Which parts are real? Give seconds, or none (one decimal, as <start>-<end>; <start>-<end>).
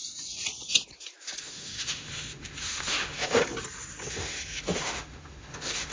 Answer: 0.0-1.4; 3.4-4.1